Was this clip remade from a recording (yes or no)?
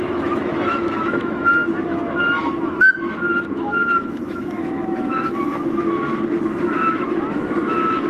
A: yes